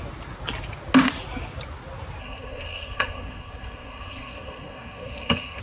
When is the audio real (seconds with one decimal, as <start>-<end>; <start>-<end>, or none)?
0.0-2.2